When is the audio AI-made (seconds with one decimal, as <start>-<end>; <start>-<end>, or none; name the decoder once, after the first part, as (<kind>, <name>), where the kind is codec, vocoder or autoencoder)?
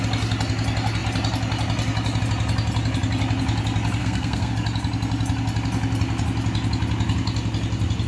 4.0-4.5 (codec, SNAC)